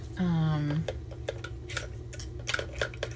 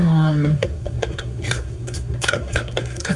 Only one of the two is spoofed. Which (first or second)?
second